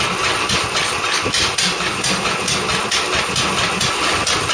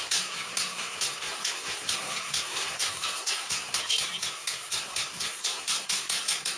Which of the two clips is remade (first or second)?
second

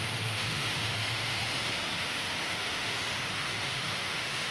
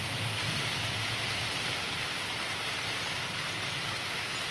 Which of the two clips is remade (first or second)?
first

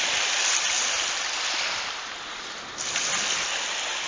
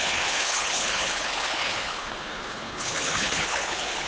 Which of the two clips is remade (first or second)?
second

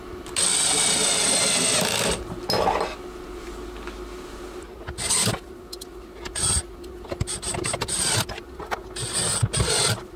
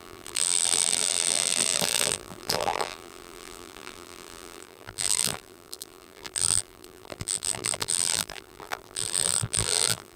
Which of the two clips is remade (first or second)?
second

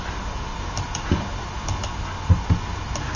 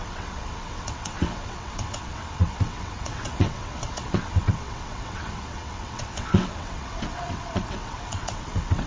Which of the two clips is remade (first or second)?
second